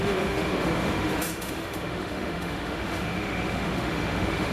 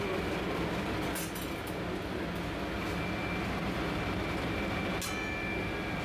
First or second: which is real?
second